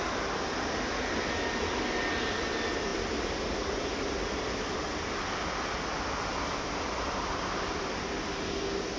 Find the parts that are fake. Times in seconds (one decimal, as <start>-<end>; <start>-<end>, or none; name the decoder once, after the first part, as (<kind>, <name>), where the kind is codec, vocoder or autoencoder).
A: none